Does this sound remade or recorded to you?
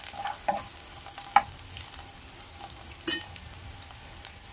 recorded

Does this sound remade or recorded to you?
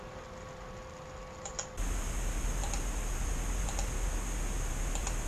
recorded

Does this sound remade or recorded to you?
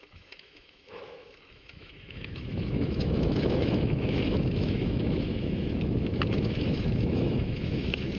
remade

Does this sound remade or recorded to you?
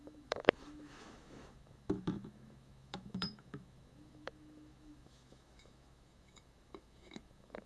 remade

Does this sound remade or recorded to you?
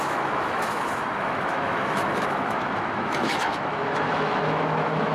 remade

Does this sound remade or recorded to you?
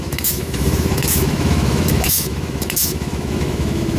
remade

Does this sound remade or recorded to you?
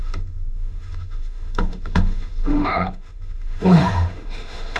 remade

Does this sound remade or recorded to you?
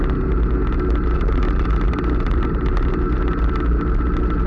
recorded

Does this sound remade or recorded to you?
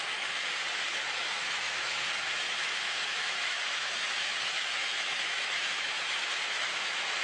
remade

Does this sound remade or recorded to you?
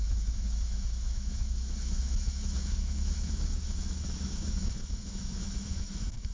remade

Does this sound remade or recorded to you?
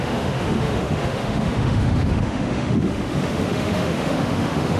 remade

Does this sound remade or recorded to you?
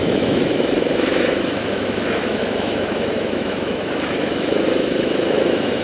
remade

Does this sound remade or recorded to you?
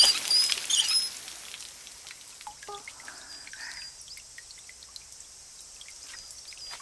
recorded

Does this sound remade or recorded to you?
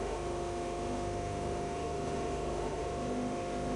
remade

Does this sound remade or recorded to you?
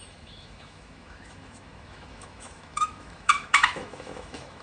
remade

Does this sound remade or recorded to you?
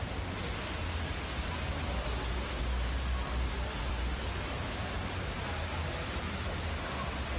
recorded